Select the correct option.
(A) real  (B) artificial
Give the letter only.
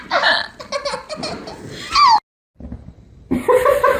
A